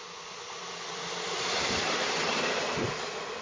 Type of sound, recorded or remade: recorded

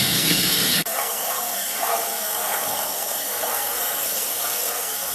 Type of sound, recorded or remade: remade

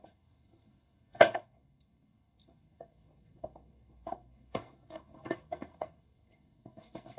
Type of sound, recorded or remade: remade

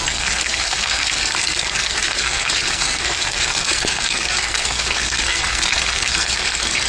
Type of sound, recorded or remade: remade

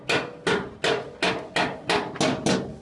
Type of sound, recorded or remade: recorded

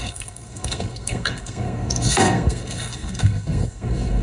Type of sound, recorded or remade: remade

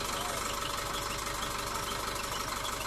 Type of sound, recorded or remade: recorded